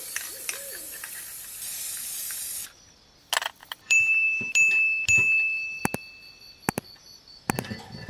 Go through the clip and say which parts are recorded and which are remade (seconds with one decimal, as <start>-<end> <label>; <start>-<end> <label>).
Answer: 0.0-3.6 recorded; 3.6-4.5 remade; 4.5-8.1 recorded